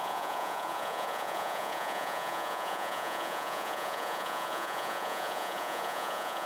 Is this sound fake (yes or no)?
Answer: yes